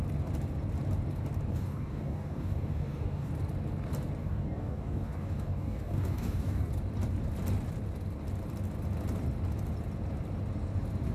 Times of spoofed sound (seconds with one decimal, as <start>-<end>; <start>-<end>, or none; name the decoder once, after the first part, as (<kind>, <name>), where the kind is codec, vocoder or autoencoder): 1.5-3.3 (codec, DAC); 4.2-6.7